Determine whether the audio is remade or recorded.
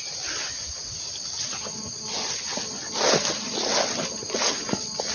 recorded